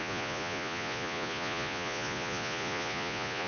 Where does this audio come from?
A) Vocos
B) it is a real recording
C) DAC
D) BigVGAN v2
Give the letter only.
A